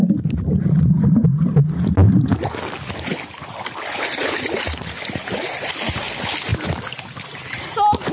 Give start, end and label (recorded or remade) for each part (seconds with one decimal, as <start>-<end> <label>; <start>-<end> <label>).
0.0-8.1 recorded